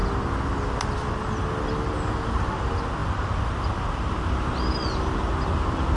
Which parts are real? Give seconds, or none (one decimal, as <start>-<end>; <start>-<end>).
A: 0.0-6.0